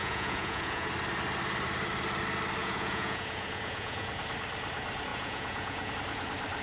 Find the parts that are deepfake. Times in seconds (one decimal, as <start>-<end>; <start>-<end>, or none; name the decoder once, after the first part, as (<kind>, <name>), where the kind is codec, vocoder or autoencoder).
0.0-0.9 (vocoder, Vocos); 2.6-4.1; 5.1-5.9